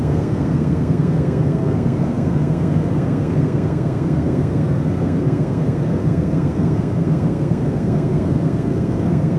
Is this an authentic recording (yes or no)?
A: no